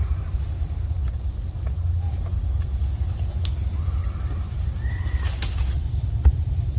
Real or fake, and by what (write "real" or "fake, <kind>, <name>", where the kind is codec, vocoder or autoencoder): real